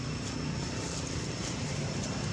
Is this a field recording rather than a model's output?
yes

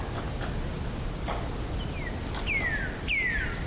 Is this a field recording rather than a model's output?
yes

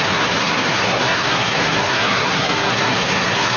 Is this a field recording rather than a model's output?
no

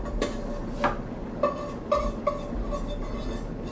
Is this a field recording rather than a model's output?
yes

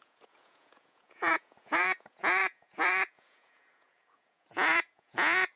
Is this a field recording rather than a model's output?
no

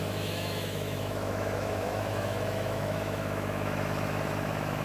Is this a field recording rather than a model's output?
no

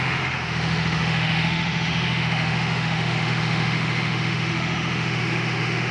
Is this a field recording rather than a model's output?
no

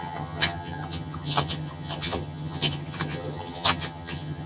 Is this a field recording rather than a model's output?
no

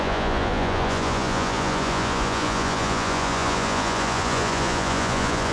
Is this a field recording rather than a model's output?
no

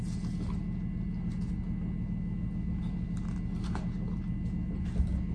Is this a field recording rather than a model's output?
yes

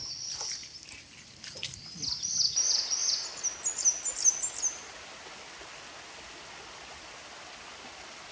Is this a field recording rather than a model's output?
yes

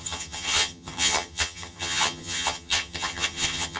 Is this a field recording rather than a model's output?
no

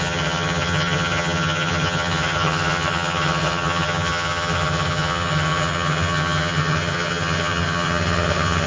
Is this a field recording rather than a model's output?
no